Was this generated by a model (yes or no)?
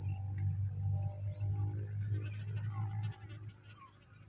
no